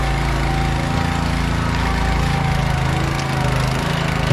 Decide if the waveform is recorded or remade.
recorded